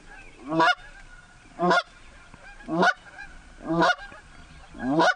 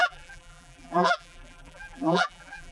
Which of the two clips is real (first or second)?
first